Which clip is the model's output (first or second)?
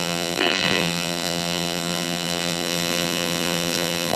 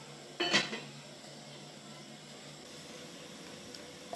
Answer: first